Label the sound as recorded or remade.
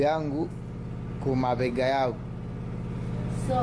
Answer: recorded